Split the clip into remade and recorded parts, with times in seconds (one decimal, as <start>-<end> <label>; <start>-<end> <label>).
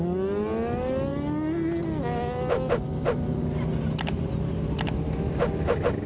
0.0-6.1 recorded